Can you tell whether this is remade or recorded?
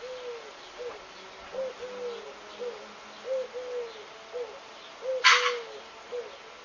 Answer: recorded